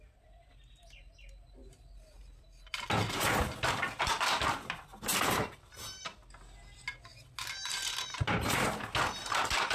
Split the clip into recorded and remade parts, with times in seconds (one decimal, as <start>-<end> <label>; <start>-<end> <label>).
0.0-5.1 recorded; 5.1-5.7 remade; 5.7-9.7 recorded

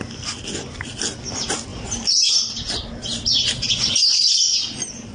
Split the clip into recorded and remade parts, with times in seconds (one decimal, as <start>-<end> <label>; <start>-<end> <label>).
0.0-1.7 recorded; 1.7-2.4 remade; 2.4-5.1 recorded

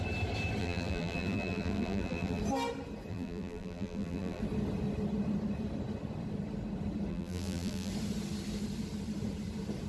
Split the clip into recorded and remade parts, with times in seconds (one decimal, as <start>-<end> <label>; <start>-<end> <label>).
0.0-0.6 recorded; 0.6-2.4 remade; 2.4-3.1 recorded; 3.1-4.4 remade; 4.4-7.1 recorded; 7.1-7.9 remade; 7.9-9.9 recorded

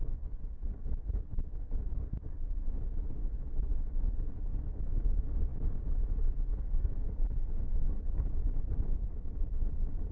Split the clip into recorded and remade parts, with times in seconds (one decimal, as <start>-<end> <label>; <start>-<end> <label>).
0.0-8.4 recorded; 8.4-9.1 remade; 9.1-10.1 recorded

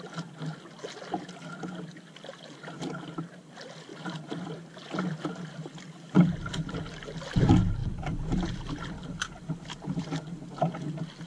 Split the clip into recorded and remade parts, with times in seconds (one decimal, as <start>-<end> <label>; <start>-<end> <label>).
0.0-3.9 recorded; 3.9-5.0 remade; 5.0-7.8 recorded; 7.8-10.3 remade; 10.3-11.3 recorded

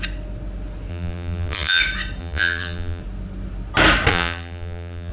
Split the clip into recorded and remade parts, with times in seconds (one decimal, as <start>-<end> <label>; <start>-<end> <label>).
0.0-0.9 recorded; 0.9-1.8 remade; 1.8-2.2 recorded; 2.2-3.0 remade; 3.0-4.1 recorded; 4.1-5.1 remade